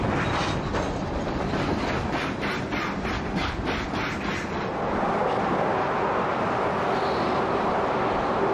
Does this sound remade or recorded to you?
recorded